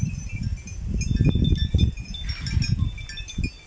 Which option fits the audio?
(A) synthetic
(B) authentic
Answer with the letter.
B